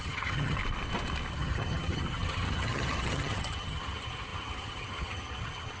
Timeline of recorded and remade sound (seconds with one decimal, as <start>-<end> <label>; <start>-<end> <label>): 0.0-0.6 remade; 0.6-1.3 recorded; 1.3-5.8 remade